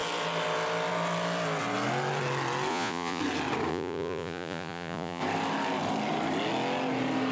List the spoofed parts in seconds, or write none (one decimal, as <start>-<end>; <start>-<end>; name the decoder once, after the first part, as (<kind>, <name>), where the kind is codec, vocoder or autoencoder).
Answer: 2.7-3.2 (vocoder, Vocos); 3.7-5.2